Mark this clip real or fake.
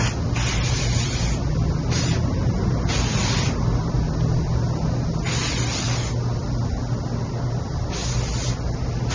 real